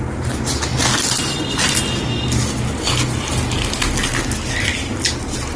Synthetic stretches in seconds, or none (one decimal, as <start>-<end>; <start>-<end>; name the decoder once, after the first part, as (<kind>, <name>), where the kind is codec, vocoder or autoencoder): none